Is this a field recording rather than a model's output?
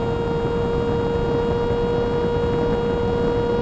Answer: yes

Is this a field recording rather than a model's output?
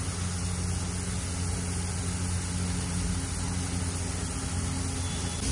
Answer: yes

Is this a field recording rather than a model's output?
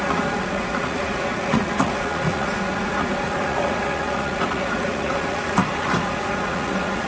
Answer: no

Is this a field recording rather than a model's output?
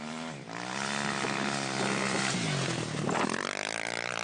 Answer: yes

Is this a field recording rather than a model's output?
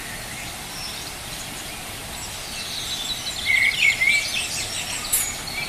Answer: yes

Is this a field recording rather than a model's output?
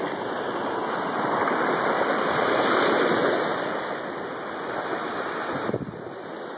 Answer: yes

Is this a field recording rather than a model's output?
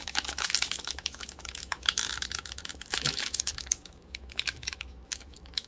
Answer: no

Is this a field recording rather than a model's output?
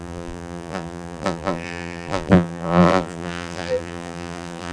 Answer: no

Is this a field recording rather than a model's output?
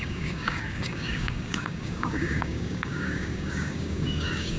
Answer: no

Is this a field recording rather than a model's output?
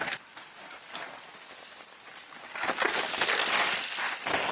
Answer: yes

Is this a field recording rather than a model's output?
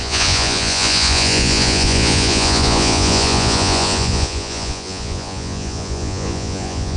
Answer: no